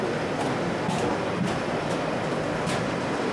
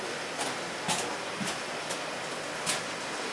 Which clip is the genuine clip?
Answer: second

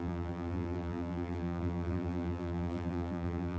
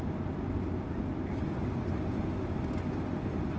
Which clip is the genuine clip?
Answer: second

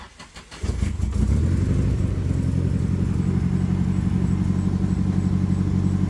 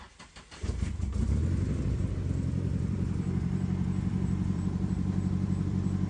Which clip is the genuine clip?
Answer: first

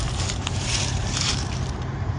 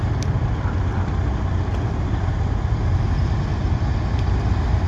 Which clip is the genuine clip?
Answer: second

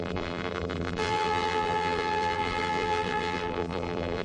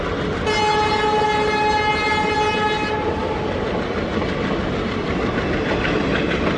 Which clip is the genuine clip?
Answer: second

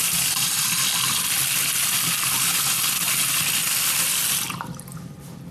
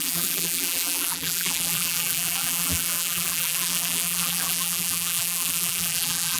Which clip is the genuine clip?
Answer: first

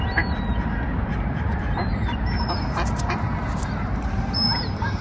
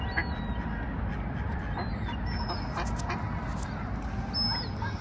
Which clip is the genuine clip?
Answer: second